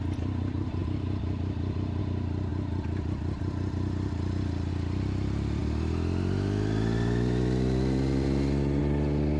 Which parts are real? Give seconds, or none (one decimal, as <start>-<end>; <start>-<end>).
0.0-9.4